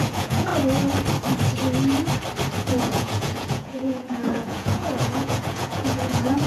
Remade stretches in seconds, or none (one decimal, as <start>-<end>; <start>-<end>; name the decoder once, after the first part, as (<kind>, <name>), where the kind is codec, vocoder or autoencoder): 0.0-0.5 (vocoder, Vocos); 2.7-6.5